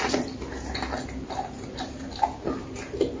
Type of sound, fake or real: real